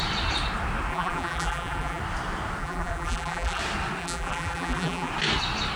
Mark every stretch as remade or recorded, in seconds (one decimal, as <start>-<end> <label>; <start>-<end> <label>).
0.0-0.9 recorded; 0.9-2.0 remade; 2.0-2.6 recorded; 2.6-3.6 remade; 3.6-4.0 recorded; 4.0-5.1 remade; 5.1-5.8 recorded